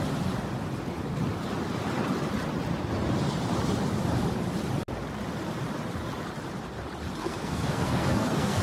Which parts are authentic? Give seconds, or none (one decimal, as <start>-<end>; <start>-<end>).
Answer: 0.0-7.2